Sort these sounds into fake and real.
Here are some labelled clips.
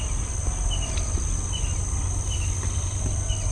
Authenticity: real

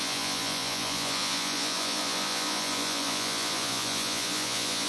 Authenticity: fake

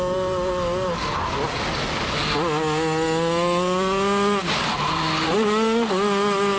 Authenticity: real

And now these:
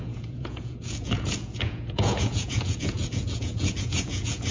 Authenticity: fake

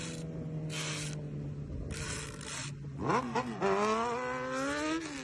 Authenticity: real